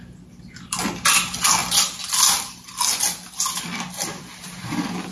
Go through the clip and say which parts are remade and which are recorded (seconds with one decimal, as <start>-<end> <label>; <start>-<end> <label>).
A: 0.0-5.1 recorded